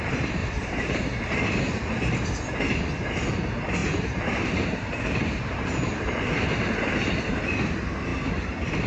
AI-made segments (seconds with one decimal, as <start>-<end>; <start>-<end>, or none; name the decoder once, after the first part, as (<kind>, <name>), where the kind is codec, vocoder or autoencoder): 0.4-1.6 (vocoder, BigVGAN v2); 3.8-7.0